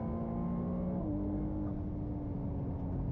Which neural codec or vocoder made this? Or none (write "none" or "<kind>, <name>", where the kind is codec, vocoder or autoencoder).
none